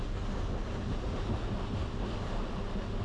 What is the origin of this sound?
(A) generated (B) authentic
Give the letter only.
B